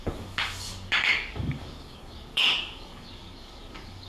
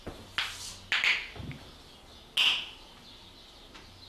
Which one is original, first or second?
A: second